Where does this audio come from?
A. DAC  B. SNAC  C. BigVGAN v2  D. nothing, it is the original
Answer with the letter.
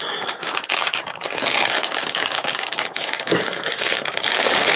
A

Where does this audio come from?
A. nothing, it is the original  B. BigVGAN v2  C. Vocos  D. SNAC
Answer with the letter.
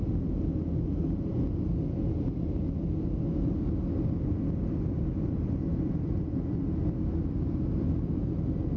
A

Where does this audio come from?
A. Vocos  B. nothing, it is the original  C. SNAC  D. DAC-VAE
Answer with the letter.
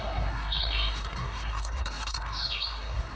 C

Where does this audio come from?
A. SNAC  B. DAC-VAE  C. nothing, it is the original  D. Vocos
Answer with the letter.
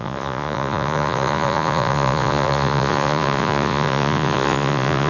D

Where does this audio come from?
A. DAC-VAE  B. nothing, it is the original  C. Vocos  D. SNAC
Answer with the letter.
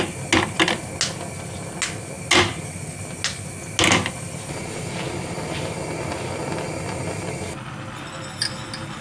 B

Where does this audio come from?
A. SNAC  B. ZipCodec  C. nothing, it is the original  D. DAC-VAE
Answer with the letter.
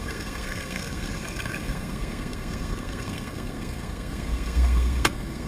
A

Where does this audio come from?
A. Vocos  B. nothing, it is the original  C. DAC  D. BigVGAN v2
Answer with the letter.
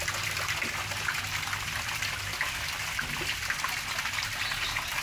B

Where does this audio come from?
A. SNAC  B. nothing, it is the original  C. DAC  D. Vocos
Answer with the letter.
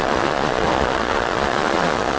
D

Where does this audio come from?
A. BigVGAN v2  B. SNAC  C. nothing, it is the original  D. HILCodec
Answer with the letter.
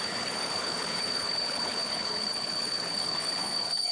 D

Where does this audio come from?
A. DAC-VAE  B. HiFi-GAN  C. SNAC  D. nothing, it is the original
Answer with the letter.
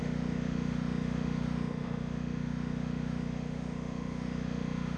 A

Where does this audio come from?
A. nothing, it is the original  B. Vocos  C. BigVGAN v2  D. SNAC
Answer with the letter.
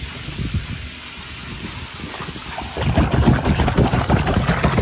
A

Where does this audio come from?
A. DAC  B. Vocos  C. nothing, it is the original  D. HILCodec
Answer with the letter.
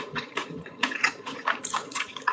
B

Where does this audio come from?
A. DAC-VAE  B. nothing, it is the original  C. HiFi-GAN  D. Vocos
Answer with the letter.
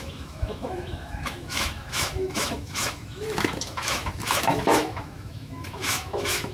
A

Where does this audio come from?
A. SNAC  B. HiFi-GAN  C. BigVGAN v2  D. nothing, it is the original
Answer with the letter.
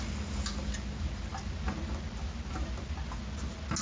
D